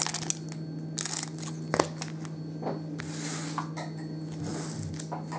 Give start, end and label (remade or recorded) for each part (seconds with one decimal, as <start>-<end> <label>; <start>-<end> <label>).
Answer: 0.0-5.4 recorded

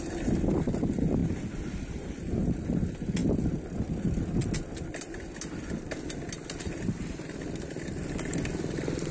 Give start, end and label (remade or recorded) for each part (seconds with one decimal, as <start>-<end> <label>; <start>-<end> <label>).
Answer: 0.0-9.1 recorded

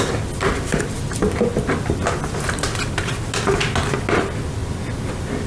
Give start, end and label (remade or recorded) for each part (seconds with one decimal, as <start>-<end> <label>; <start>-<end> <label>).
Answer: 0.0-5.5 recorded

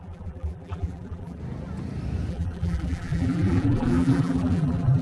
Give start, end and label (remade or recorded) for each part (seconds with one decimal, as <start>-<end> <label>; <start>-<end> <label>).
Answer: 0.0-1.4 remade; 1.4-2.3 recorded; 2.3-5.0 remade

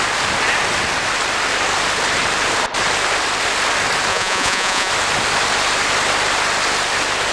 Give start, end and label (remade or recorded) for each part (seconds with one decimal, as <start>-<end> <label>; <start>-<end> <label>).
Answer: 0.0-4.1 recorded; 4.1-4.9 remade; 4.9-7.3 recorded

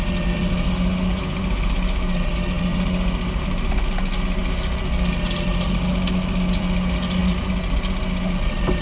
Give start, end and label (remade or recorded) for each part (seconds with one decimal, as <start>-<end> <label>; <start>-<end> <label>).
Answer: 0.0-8.8 recorded

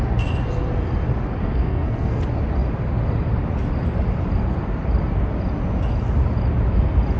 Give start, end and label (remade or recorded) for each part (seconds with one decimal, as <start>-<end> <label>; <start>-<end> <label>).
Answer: 0.0-1.4 recorded; 1.4-2.2 remade; 2.2-7.2 recorded